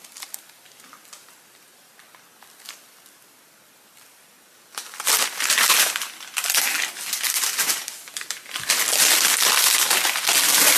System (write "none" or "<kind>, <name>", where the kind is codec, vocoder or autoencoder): none